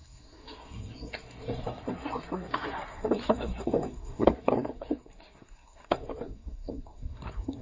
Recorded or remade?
remade